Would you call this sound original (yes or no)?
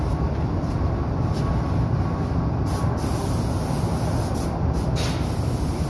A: yes